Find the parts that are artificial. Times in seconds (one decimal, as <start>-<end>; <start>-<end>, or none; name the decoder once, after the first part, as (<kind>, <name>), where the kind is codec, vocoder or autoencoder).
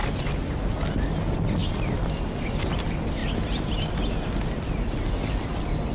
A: none